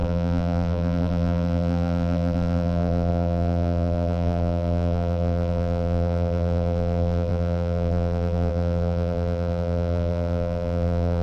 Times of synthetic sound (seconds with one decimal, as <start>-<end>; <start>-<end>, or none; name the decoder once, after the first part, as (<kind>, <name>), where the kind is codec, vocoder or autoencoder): 0.0-11.2 (vocoder, BigVGAN v2)